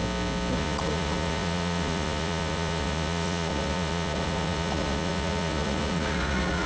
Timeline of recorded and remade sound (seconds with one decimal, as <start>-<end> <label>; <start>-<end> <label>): 0.0-0.5 recorded; 0.5-6.7 remade